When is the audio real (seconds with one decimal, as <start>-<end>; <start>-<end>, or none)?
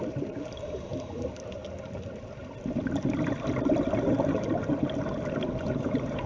1.6-5.4